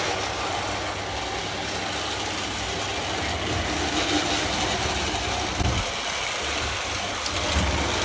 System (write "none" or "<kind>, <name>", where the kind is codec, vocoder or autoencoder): none